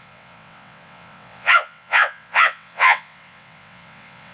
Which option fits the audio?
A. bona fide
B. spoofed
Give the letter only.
B